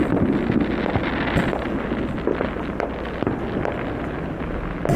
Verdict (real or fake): real